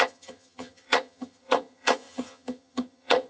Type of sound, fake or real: fake